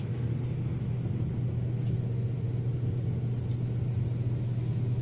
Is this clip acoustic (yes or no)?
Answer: yes